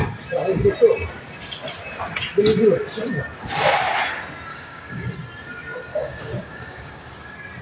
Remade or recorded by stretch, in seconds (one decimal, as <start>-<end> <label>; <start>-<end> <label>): 0.0-4.5 recorded; 4.5-5.1 remade; 5.1-5.9 recorded; 5.9-7.1 remade; 7.1-7.6 recorded